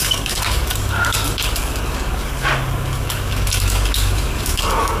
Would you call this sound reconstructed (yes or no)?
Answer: yes